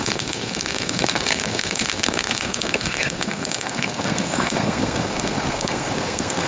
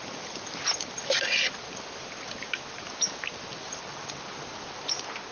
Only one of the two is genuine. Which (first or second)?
second